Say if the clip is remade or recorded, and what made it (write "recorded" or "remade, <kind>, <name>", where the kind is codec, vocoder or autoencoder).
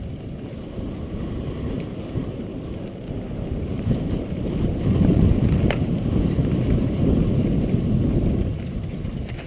remade, vocoder, BigVGAN v2